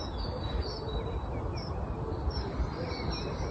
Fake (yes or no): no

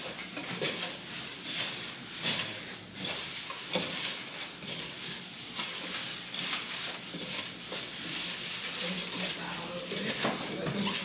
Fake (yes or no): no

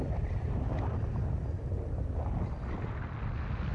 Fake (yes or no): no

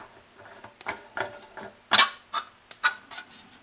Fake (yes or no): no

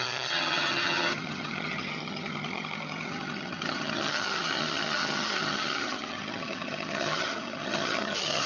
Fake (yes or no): yes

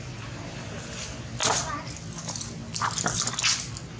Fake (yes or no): no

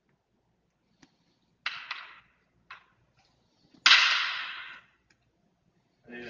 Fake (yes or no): no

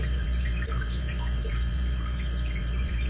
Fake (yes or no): yes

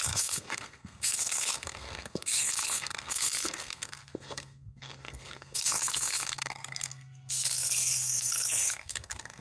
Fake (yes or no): yes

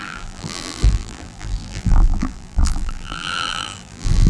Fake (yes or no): yes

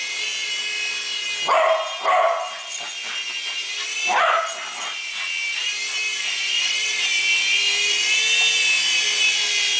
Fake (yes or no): no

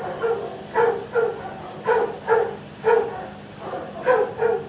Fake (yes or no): no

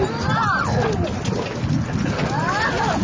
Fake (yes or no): no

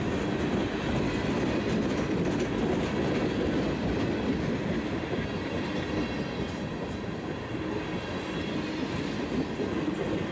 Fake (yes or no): no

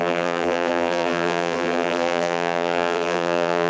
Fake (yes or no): yes